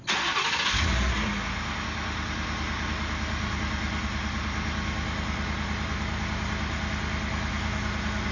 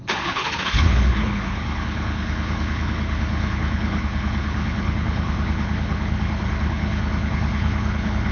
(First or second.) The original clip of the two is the first